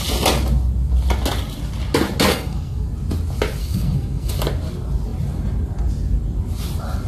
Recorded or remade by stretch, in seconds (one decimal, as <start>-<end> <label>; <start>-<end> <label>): 0.0-2.3 recorded; 2.3-2.9 remade; 2.9-3.6 recorded; 3.6-4.3 remade; 4.3-7.1 recorded